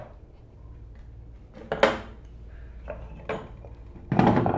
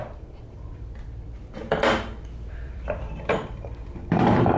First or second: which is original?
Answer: first